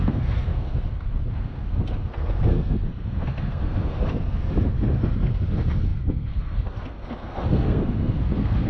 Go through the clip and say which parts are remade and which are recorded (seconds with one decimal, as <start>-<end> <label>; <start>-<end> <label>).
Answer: 0.0-8.7 remade